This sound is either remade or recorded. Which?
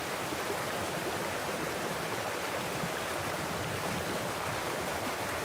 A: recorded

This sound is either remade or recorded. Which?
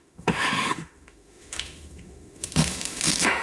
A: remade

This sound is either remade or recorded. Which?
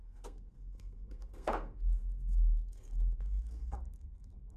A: remade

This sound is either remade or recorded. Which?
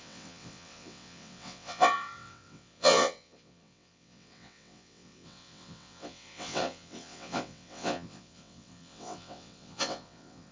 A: remade